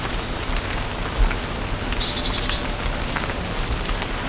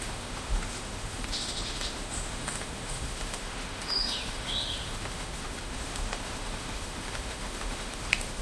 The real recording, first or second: first